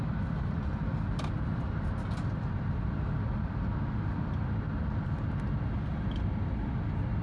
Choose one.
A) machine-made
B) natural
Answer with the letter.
B